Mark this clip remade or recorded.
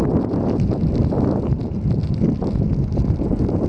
recorded